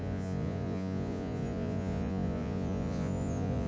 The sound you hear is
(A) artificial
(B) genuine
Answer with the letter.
A